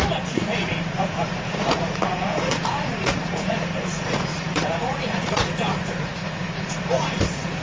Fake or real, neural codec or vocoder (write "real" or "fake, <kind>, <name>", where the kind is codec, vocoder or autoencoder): fake, vocoder, Vocos